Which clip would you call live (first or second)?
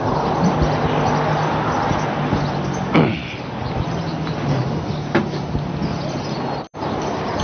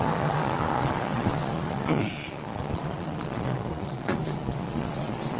first